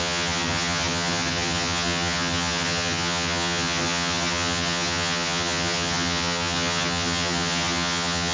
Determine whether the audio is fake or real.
fake